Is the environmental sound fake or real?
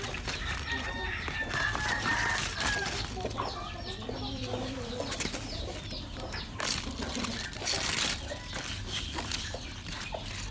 real